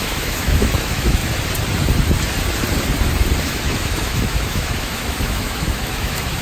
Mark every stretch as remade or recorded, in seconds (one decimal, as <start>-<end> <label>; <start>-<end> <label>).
0.0-1.2 remade; 1.2-3.4 recorded; 3.4-6.4 remade